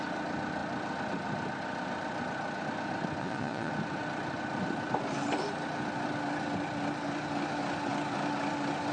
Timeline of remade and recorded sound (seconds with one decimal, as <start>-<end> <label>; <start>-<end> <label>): 0.0-3.2 recorded; 3.2-3.7 remade; 3.7-8.9 recorded